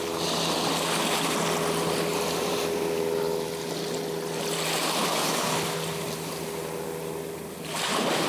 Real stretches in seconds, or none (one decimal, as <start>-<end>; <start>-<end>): 0.0-8.3